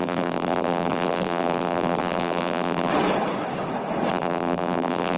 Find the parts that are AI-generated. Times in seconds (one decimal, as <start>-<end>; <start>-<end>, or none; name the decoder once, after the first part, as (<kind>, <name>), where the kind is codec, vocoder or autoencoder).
0.0-2.9 (vocoder, BigVGAN v2); 4.1-5.2